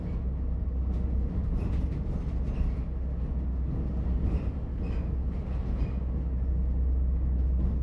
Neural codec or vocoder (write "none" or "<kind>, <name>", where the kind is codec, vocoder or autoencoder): none